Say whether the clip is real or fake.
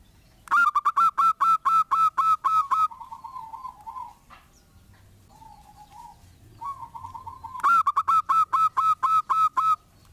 real